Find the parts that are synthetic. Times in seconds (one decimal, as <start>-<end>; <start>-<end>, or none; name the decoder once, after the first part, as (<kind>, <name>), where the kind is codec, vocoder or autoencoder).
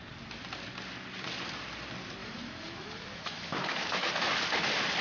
2.2-4.1 (autoencoder, DAC-VAE)